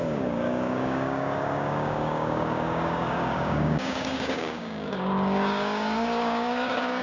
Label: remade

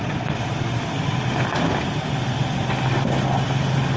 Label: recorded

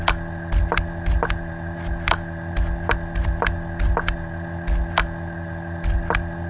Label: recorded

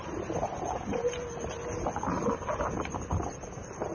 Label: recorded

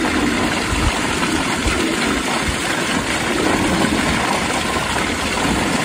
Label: recorded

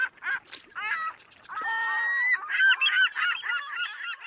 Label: recorded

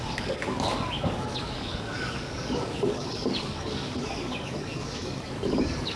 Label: remade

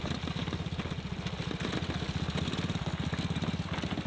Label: recorded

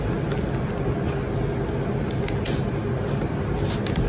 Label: recorded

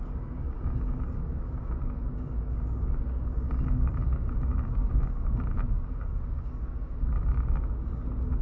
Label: remade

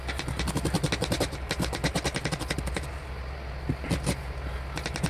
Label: recorded